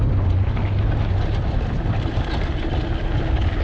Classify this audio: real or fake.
real